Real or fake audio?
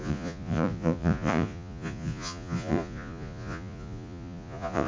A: fake